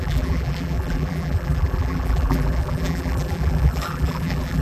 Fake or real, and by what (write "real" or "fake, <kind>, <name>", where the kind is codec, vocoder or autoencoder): fake, vocoder, BigVGAN v2